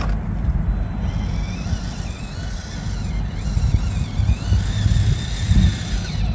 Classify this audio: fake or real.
real